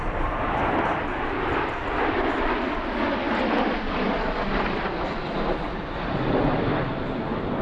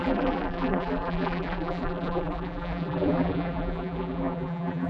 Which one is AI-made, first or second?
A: second